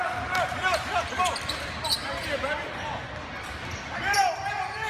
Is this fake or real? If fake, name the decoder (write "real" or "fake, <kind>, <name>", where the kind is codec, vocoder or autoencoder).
real